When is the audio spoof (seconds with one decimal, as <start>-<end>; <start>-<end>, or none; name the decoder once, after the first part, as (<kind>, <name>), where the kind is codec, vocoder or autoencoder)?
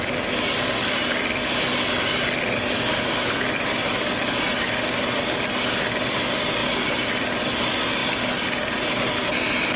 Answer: none